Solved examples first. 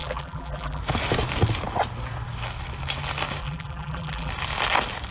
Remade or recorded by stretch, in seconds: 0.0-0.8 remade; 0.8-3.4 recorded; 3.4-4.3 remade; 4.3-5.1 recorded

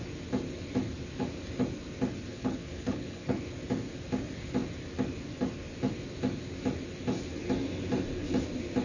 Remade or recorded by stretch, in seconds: 0.0-2.3 recorded; 2.3-3.4 remade; 3.4-8.8 recorded

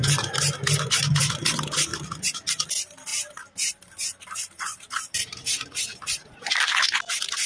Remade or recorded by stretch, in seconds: 0.0-3.1 recorded; 3.1-6.8 remade; 6.8-7.5 recorded

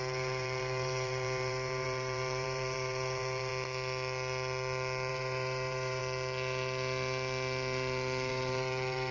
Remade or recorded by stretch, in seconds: 0.0-3.5 remade; 3.5-5.1 recorded; 5.1-6.0 remade; 6.0-8.3 recorded; 8.3-9.1 remade

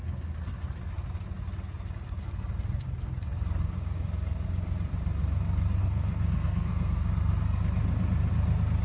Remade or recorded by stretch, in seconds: 0.0-5.8 recorded; 5.8-7.6 remade; 7.6-8.8 recorded

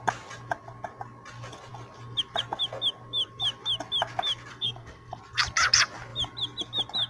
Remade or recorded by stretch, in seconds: 0.0-4.5 recorded; 4.5-5.2 remade; 5.2-7.1 recorded

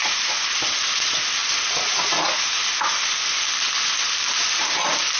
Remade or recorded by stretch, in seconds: 0.0-5.2 recorded